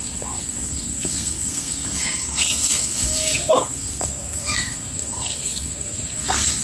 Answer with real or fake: fake